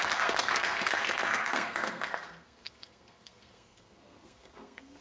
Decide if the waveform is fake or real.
fake